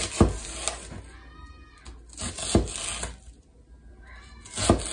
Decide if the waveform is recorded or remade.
recorded